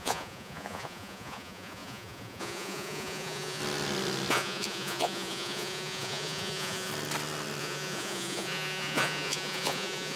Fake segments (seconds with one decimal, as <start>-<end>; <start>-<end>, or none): 0.0-3.6; 4.3-6.9; 7.6-10.2